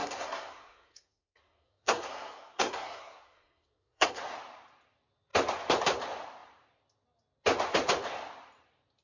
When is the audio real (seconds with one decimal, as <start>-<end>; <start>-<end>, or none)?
4.2-9.0